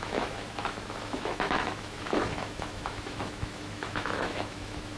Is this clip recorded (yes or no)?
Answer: no